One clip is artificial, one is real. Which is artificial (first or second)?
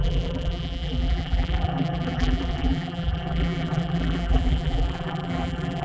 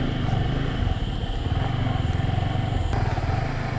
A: first